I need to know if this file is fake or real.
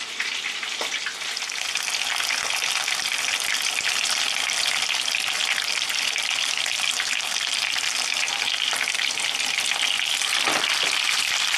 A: real